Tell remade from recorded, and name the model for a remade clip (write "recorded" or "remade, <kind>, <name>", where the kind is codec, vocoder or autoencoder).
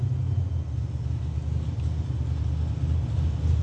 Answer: recorded